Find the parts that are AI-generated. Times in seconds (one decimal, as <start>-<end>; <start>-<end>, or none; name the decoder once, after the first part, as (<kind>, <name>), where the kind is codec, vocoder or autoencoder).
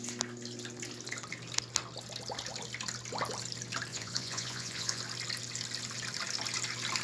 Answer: 3.9-5.0 (vocoder, Vocos)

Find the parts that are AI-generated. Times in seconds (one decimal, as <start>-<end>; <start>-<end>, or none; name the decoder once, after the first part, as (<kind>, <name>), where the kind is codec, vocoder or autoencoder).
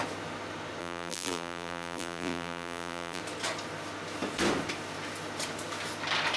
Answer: 0.8-3.2 (vocoder, BigVGAN v2)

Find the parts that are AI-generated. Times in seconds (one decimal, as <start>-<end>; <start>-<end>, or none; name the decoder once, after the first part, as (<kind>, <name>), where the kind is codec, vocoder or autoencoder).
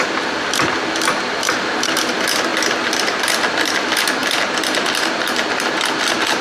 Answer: none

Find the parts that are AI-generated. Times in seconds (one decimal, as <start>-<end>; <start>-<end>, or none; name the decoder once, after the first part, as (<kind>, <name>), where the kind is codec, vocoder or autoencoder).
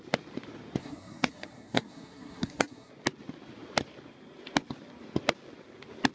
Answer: 0.8-2.9 (codec, SNAC)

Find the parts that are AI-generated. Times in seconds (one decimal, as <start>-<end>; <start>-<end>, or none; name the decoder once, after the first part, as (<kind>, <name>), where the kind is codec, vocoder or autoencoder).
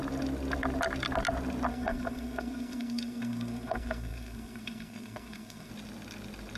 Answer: 1.7-5.7 (codec, SNAC)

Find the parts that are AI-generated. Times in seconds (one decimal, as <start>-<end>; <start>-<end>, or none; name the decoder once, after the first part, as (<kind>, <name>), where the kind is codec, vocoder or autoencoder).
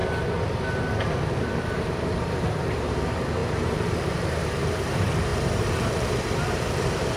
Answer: 1.6-7.2 (vocoder, BigVGAN v2)